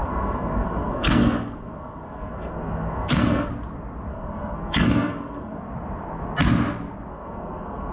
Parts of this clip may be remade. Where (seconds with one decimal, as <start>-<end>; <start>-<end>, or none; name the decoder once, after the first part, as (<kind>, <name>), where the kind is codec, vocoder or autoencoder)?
0.0-3.5 (codec, SNAC); 4.1-5.6; 7.1-7.9